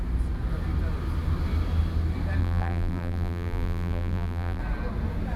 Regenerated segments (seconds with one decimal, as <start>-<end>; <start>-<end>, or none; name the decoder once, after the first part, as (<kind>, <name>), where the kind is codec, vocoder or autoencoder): 2.4-4.6 (vocoder, BigVGAN v2)